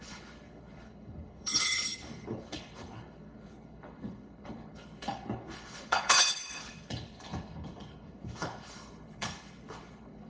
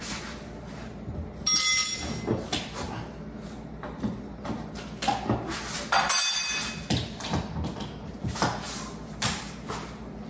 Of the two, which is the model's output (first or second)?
first